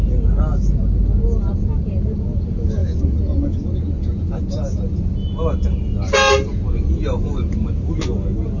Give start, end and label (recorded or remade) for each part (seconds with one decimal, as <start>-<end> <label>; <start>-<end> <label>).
0.0-8.6 recorded